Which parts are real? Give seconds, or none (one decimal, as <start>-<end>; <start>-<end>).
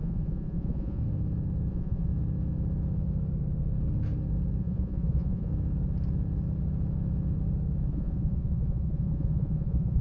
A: 1.0-1.7; 2.1-4.6; 5.5-7.9